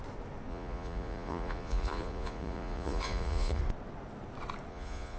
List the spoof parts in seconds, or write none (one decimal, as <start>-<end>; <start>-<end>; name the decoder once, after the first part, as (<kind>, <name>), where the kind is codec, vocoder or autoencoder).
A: 0.5-3.6 (vocoder, Vocos); 4.7-5.2